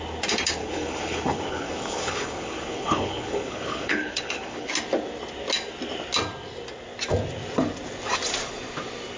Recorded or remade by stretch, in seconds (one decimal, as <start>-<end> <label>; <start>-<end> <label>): 0.0-0.6 recorded; 0.6-4.7 remade; 4.7-9.2 recorded